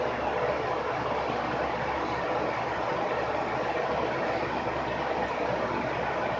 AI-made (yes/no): no